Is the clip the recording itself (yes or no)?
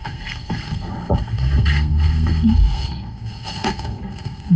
no